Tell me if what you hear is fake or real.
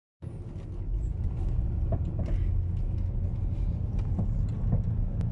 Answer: real